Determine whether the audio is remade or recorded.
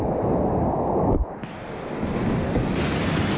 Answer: recorded